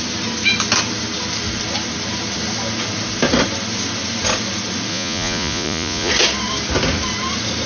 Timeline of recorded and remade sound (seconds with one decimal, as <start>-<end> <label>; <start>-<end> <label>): 0.0-4.9 recorded; 4.9-6.1 remade; 6.1-7.7 recorded